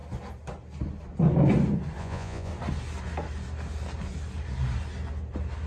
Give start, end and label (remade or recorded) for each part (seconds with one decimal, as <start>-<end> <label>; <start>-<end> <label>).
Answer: 0.0-2.0 recorded; 2.0-2.5 remade; 2.5-5.7 recorded